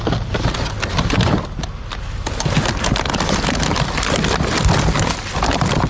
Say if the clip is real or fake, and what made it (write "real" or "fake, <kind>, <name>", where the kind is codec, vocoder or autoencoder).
real